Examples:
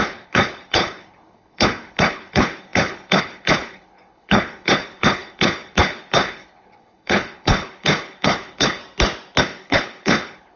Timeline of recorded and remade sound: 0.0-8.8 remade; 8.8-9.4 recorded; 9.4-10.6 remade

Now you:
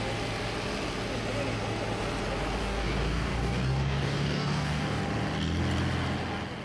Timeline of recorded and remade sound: 0.0-2.6 recorded; 2.6-5.0 remade; 5.0-6.6 recorded

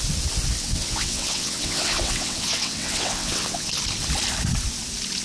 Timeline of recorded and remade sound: 0.0-0.6 recorded; 0.6-3.7 remade; 3.7-5.2 recorded

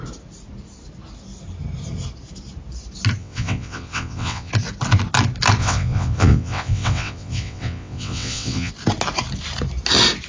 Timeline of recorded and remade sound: 0.0-3.2 recorded; 3.2-4.5 remade; 4.5-5.6 recorded; 5.6-8.7 remade; 8.7-10.3 recorded

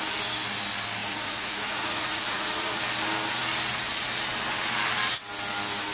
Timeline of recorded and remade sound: 0.0-1.0 recorded; 1.0-2.8 remade; 2.8-5.9 recorded